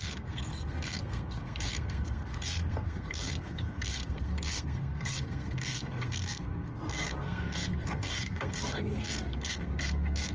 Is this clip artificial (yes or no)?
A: yes